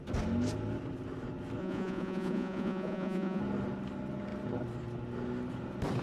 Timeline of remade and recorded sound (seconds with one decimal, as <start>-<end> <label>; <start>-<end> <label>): 0.0-1.6 recorded; 1.6-3.4 remade; 3.4-6.0 recorded